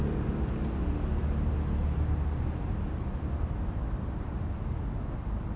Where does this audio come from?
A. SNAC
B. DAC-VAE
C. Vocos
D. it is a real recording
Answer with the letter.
D